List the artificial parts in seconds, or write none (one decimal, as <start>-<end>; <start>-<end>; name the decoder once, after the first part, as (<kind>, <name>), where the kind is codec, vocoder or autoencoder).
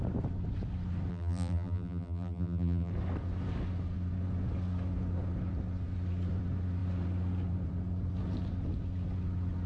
1.1-2.9 (vocoder, BigVGAN v2)